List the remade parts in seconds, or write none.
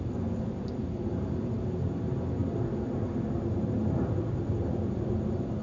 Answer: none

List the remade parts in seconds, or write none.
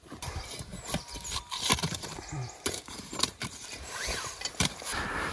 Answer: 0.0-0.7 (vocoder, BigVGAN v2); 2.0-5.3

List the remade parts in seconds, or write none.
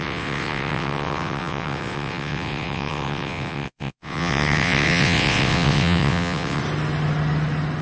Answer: 0.0-6.6 (vocoder, WaveNeXt)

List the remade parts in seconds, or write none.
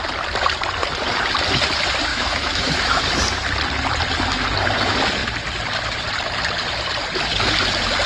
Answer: 2.1-3.0 (autoencoder, DAC-VAE)